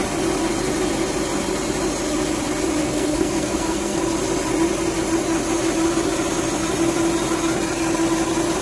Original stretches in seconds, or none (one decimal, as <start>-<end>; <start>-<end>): 0.0-2.8; 4.0-8.6